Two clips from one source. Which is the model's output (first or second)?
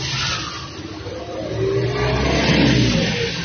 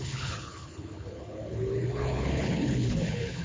second